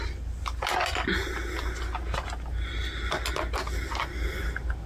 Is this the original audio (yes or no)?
yes